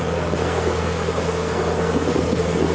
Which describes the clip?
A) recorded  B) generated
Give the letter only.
B